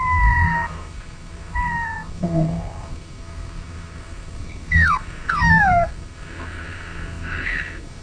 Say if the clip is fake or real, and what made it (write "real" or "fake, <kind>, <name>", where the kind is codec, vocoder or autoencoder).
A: fake, codec, SNAC